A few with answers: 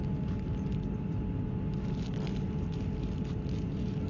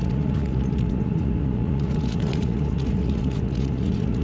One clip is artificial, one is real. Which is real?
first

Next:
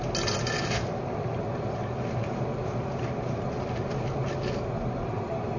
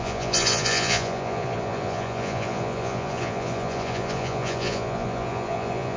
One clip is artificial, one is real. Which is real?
first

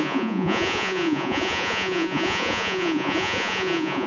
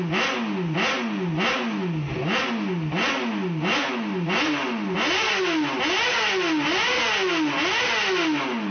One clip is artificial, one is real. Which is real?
second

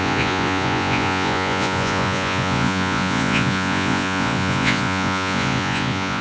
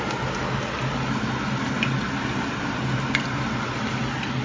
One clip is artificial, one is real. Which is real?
second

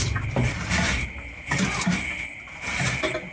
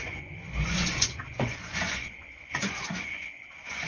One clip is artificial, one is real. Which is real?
first